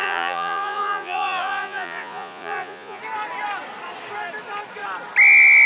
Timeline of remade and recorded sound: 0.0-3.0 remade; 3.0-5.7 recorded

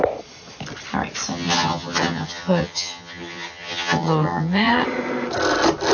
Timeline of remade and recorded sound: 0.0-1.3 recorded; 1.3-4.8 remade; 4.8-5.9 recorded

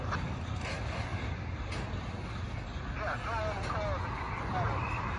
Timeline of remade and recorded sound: 0.0-5.2 recorded

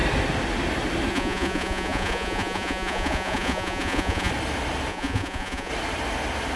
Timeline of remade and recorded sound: 0.0-1.1 recorded; 1.1-4.3 remade; 4.3-4.9 recorded; 4.9-5.7 remade; 5.7-6.6 recorded